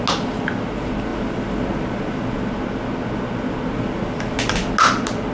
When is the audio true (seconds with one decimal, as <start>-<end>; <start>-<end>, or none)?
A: 0.0-5.3